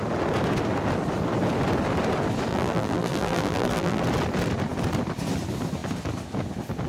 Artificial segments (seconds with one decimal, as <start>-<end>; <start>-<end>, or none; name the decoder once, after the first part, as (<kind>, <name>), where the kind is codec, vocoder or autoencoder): 2.5-4.0 (vocoder, BigVGAN v2)